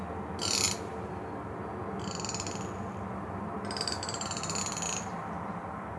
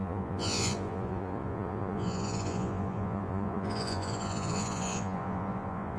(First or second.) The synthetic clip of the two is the second